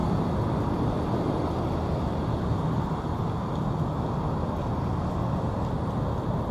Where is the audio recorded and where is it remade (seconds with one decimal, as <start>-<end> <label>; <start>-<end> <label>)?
0.0-6.5 recorded